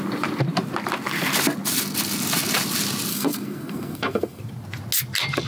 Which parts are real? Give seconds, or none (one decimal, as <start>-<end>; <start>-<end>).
0.0-3.1; 4.4-5.5